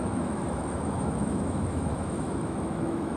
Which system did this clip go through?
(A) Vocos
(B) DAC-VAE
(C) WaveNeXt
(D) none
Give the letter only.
B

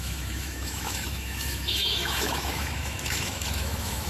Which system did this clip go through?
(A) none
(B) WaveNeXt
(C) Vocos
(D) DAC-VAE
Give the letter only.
D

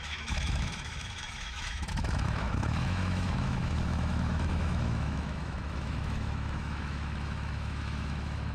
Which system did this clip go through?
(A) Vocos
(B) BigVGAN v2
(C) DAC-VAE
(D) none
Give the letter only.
C